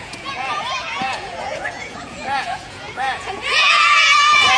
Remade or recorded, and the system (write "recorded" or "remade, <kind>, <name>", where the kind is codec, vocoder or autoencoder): remade, vocoder, Vocos